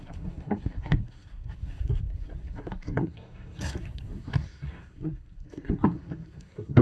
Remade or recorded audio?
remade